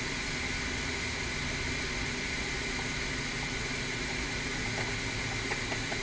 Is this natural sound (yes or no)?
yes